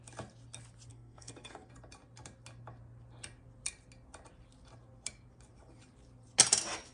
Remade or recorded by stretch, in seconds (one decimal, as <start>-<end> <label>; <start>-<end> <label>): 0.0-0.9 recorded; 0.9-1.7 remade; 1.7-6.9 recorded